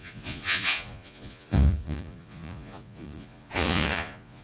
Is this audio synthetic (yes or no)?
yes